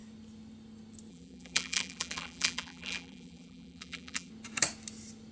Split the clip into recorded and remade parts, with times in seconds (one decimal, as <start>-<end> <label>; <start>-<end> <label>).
0.0-1.1 recorded; 1.1-4.3 remade; 4.3-5.3 recorded